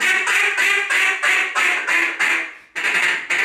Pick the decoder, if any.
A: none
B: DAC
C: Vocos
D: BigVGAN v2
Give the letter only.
A